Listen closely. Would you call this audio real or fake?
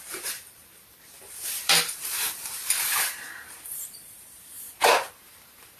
fake